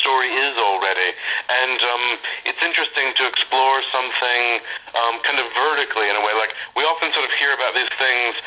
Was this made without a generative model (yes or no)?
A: yes